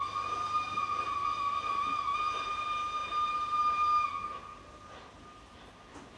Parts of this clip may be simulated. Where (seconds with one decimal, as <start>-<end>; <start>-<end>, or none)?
none